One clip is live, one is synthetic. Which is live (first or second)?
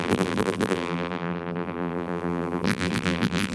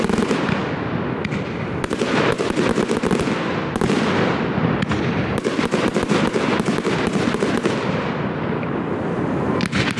second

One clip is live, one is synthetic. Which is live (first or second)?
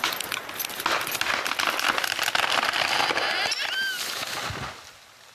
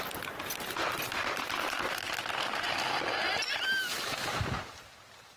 first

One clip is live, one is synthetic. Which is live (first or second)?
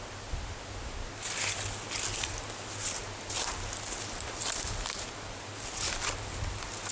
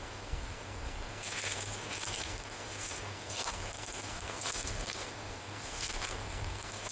first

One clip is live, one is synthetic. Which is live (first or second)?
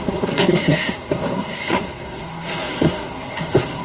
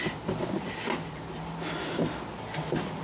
second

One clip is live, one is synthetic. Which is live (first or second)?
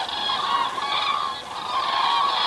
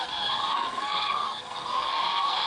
first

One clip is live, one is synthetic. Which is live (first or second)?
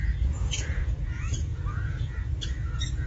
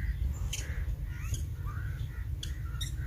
second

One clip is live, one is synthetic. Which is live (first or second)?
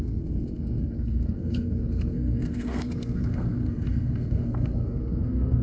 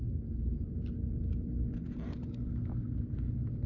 second